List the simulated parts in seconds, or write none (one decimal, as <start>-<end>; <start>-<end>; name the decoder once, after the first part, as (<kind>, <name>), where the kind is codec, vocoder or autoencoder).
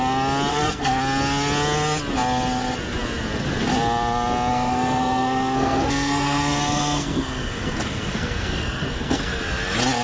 0.5-1.0 (codec, SNAC); 4.5-9.4